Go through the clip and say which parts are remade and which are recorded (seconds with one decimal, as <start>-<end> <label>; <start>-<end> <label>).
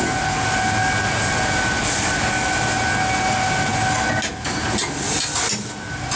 0.0-6.2 recorded